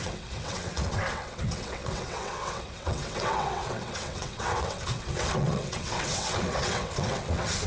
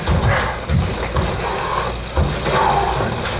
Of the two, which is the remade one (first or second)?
first